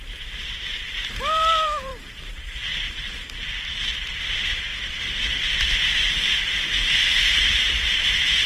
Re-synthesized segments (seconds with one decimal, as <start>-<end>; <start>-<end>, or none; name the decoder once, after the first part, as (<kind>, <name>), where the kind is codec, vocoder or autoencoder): 0.0-1.9 (vocoder, BigVGAN v2); 4.1-4.7; 7.0-8.5